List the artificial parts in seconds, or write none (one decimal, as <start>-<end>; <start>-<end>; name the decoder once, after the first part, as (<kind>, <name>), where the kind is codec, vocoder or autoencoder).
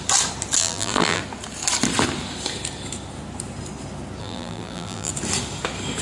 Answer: 0.6-1.2 (vocoder, BigVGAN v2); 4.2-5.1